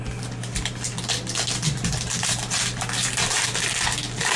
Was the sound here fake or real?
real